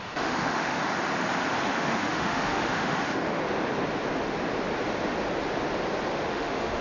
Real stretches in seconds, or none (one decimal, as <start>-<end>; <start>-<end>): 0.8-1.7; 3.4-6.3

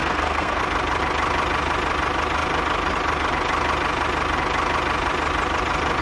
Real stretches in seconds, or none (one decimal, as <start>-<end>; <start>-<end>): 0.6-6.0

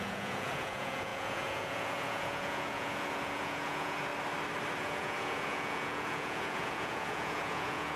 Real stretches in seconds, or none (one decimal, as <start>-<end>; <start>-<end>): 4.1-4.8

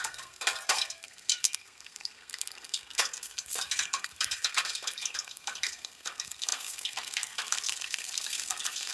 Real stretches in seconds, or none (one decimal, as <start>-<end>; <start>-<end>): none

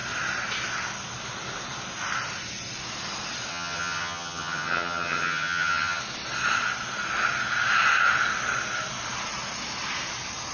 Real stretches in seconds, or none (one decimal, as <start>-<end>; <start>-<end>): 0.0-3.5; 6.0-10.5

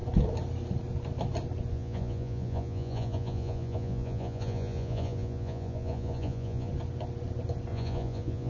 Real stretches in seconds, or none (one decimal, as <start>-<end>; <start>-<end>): 0.0-1.7; 6.7-7.7

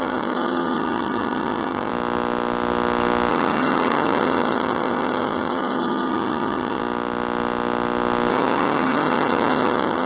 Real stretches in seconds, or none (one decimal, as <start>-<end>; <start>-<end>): 1.9-3.3; 6.8-8.3

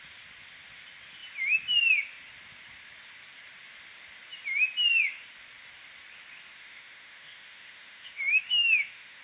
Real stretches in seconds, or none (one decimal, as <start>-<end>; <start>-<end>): 0.0-6.5